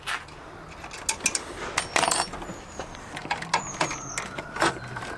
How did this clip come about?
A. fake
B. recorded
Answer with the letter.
B